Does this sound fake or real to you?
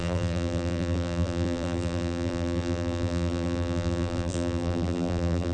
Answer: fake